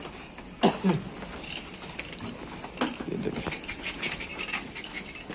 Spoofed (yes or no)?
no